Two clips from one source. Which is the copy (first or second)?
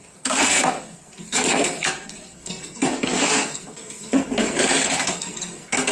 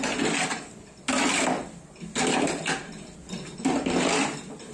first